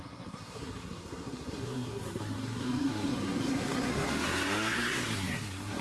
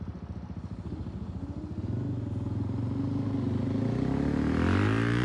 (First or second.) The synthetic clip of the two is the first